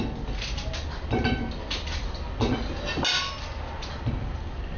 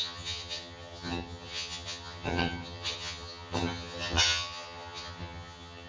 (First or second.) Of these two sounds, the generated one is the second